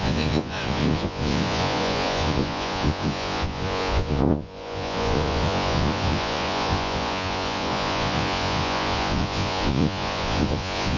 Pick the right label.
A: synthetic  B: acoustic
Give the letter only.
A